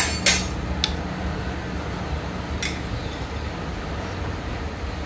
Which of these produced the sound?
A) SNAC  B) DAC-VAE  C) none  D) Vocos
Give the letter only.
C